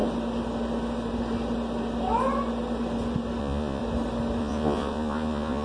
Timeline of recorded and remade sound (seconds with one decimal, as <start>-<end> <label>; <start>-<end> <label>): 0.0-3.4 recorded; 3.4-3.8 remade; 3.8-4.4 recorded; 4.4-5.6 remade